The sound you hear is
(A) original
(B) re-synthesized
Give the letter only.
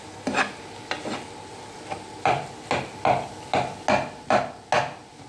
A